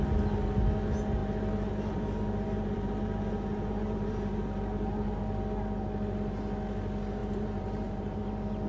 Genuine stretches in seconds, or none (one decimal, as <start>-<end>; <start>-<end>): 0.0-1.2; 5.2-7.2; 8.2-8.7